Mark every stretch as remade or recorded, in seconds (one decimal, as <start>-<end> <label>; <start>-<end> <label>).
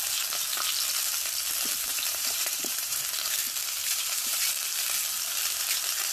0.0-1.9 recorded; 1.9-3.0 remade; 3.0-3.8 recorded; 3.8-4.6 remade; 4.6-6.1 recorded